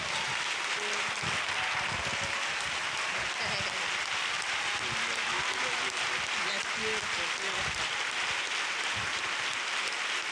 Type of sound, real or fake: real